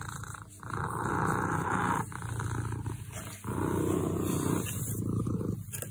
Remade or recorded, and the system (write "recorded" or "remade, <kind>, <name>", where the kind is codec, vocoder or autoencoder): recorded